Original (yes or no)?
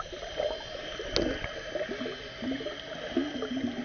yes